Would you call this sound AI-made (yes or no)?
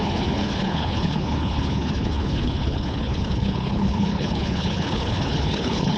yes